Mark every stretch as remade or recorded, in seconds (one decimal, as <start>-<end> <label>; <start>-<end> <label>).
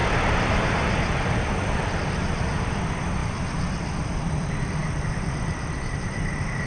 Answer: 0.0-6.7 remade